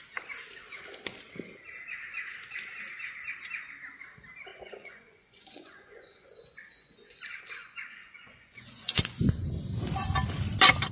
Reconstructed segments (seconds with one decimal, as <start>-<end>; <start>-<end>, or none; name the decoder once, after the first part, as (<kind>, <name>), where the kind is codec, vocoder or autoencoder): 4.5-9.5 (vocoder, Vocos)